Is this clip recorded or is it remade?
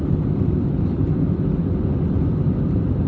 recorded